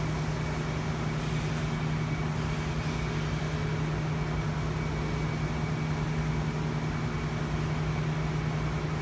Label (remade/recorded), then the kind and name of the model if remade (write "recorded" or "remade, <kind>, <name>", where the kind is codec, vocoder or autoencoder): recorded